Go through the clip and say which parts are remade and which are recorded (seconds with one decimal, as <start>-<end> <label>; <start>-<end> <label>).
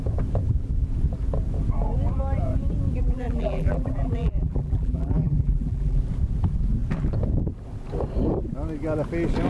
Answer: 0.0-3.0 recorded; 3.0-6.0 remade; 6.0-9.5 recorded